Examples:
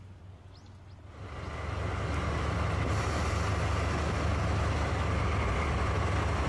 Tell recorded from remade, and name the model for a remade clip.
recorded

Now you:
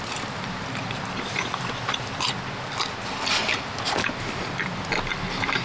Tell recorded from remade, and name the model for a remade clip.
recorded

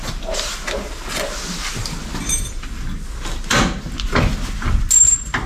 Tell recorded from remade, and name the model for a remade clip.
recorded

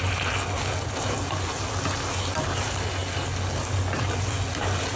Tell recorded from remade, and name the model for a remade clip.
recorded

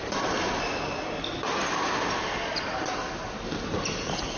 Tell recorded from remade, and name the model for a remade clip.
recorded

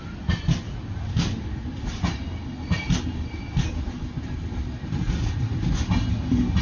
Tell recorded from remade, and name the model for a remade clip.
recorded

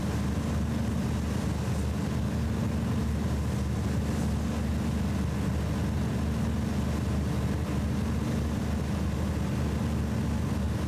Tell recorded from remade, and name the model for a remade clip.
recorded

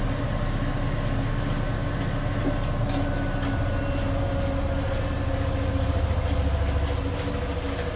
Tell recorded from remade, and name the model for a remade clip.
recorded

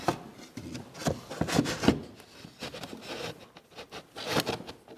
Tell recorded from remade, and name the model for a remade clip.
recorded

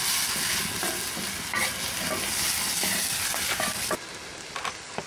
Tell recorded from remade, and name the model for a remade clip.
recorded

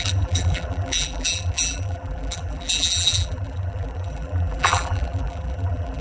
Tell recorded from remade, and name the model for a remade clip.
remade, vocoder, BigVGAN v2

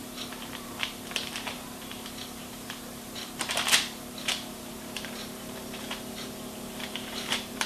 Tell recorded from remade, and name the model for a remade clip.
remade, vocoder, BigVGAN v2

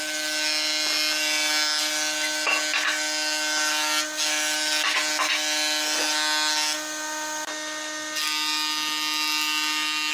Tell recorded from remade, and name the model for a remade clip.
recorded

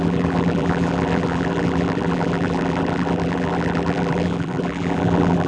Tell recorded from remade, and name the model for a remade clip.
remade, vocoder, BigVGAN v2